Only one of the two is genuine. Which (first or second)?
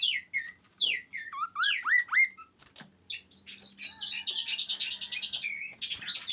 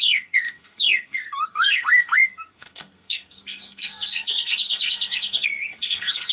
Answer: first